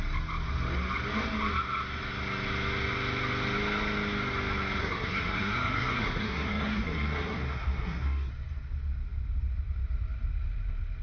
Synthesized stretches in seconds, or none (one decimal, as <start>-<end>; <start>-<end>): 4.8-8.3

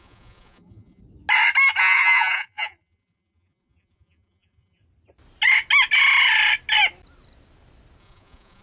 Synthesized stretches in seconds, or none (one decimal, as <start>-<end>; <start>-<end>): 0.0-1.0; 1.8-4.8; 8.0-8.6

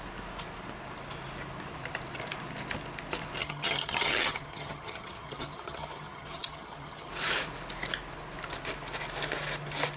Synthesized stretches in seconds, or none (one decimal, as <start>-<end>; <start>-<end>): 3.4-7.1

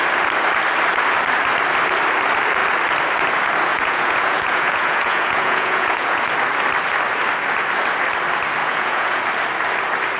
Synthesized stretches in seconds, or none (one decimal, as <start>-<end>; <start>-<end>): 3.7-6.2; 8.6-9.2

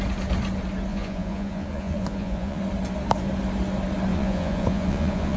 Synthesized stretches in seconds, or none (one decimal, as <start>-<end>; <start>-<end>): 0.9-2.6; 4.1-5.4

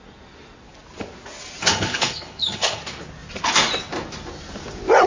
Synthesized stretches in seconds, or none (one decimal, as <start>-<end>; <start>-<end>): 1.7-2.8